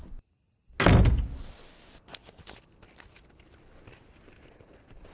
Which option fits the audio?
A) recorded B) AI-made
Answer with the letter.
A